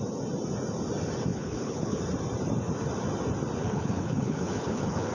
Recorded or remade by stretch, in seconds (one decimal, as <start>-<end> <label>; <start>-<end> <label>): 0.0-1.3 recorded; 1.3-2.0 remade; 2.0-3.6 recorded; 3.6-5.1 remade